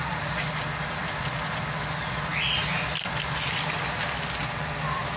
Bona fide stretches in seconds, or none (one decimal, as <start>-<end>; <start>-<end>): 0.0-5.2